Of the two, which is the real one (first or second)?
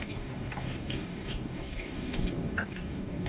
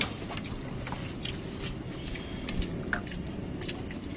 second